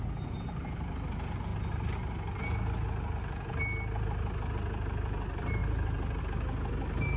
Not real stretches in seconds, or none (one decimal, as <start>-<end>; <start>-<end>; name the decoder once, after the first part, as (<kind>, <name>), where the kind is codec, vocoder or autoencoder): none